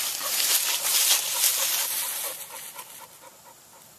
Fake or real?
real